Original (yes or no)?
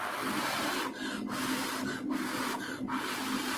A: yes